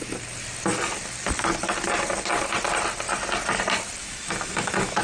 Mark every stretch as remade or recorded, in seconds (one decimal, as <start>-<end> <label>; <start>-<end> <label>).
0.0-4.0 recorded; 4.0-5.0 remade